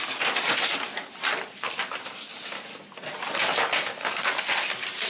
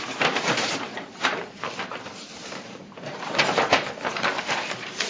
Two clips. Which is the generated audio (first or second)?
second